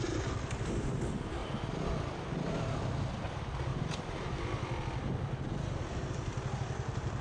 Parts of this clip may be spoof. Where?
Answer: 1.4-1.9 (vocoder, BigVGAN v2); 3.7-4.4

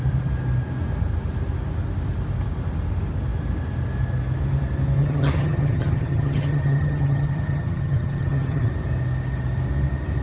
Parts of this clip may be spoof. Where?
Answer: 5.0-8.7 (vocoder, HiFi-GAN)

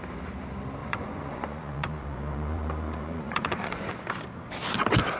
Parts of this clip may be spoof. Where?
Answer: 0.8-3.9 (vocoder, Vocos)

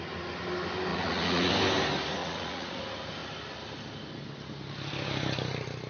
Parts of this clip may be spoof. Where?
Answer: 0.9-1.5 (vocoder, Vocos); 2.2-2.8

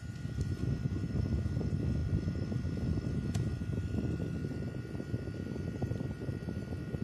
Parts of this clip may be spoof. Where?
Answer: none

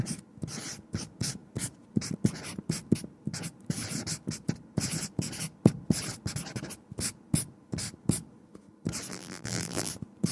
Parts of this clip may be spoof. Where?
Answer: 9.1-9.9 (vocoder, BigVGAN v2)

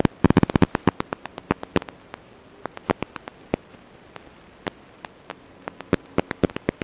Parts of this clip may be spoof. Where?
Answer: none